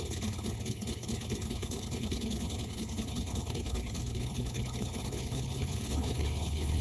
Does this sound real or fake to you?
fake